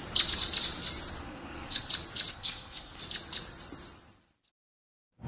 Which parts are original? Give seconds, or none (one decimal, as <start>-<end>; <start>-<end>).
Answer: 0.0-1.2; 1.9-2.3; 3.0-5.3